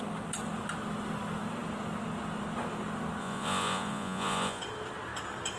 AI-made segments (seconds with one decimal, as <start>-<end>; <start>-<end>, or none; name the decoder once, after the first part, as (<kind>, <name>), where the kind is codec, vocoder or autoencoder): 3.2-4.6 (vocoder, Vocos)